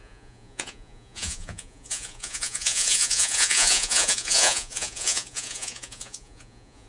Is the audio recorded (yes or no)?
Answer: no